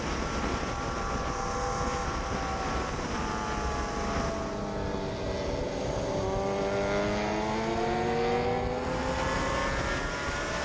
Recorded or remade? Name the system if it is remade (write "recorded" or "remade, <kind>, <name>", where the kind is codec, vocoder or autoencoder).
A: recorded